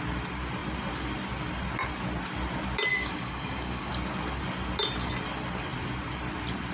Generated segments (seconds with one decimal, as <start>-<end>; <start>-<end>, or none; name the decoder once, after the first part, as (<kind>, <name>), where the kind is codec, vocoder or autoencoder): 2.9-3.9 (codec, DAC)